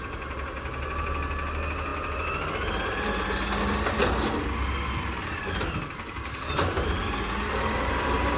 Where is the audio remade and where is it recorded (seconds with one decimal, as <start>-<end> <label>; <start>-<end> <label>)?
0.0-8.4 recorded